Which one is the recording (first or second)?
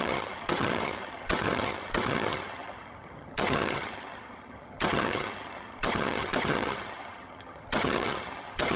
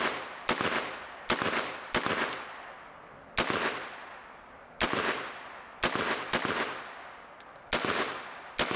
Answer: second